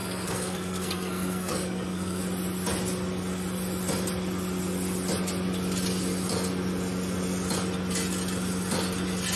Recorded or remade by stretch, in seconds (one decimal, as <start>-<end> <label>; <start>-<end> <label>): 0.0-2.2 remade; 2.2-9.4 recorded